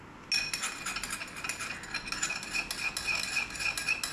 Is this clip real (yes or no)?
yes